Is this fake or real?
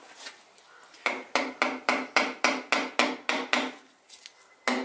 real